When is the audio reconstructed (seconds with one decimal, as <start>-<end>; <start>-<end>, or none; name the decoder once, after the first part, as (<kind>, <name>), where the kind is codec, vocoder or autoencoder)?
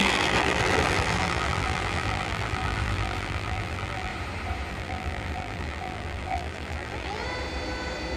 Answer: 0.0-4.1 (vocoder, BigVGAN v2); 4.7-7.2